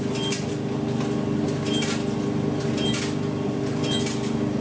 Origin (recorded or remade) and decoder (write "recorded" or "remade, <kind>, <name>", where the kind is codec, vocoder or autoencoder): recorded